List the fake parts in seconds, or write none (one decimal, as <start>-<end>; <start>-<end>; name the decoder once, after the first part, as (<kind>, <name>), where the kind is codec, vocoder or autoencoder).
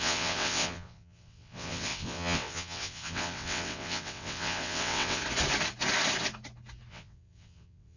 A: 0.0-5.2 (vocoder, WaveNeXt); 6.9-8.0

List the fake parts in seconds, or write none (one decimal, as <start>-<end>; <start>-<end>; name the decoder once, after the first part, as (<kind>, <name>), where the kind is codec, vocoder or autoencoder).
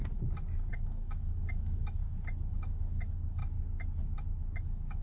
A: 0.7-2.0 (codec, DAC); 2.5-3.4; 4.6-5.0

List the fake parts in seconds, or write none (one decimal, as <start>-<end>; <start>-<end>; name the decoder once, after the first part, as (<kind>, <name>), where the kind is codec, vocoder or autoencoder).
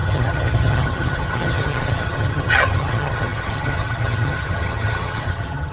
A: 0.0-5.7 (vocoder, HiFi-GAN)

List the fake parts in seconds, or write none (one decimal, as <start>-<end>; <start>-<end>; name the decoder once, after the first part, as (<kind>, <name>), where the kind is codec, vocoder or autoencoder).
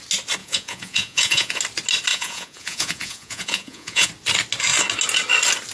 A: 0.4-1.6 (vocoder, Vocos); 2.1-4.1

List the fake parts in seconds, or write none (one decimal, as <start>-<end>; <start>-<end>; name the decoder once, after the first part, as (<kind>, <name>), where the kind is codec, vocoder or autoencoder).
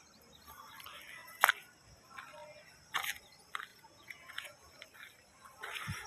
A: 3.7-4.7 (vocoder, Vocos)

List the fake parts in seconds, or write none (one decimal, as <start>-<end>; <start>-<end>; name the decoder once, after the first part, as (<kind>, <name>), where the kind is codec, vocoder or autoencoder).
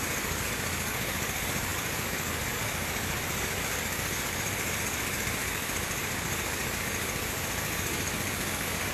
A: 0.0-8.9 (codec, DAC)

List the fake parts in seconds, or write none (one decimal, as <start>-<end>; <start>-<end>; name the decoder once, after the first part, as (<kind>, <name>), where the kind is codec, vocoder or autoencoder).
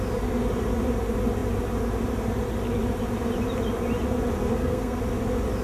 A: 4.5-5.0 (codec, SNAC)